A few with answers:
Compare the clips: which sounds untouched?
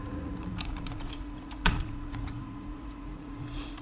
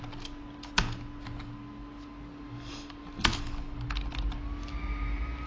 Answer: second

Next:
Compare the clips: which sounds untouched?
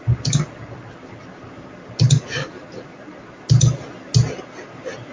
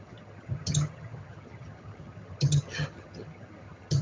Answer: first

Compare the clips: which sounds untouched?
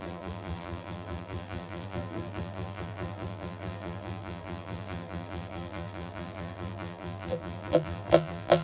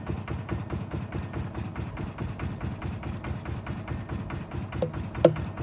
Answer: second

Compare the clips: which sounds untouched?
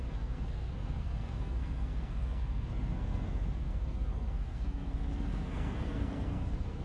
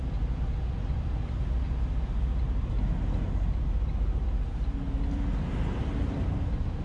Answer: second